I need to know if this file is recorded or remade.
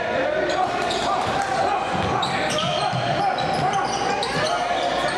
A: recorded